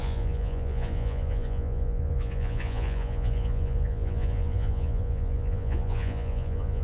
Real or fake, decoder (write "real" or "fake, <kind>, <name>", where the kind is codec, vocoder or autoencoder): fake, vocoder, Vocos